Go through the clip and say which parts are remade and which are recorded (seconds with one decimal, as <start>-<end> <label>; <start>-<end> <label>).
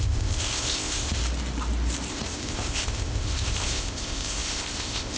0.0-1.2 remade; 1.2-2.1 recorded; 2.1-5.2 remade